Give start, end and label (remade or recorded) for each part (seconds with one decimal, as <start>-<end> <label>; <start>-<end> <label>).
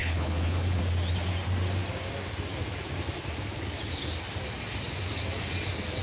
0.0-0.8 remade; 0.8-6.0 recorded